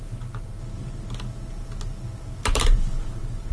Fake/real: real